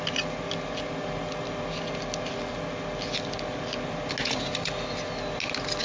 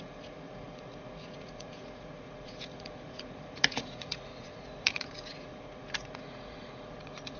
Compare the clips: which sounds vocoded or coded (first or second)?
second